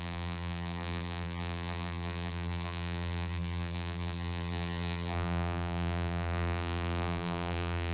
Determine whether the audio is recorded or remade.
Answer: remade